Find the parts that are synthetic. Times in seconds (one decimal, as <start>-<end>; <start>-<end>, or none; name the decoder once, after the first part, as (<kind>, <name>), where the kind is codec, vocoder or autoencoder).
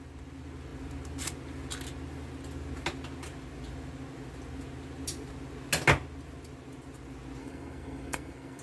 7.4-8.6 (codec, SNAC)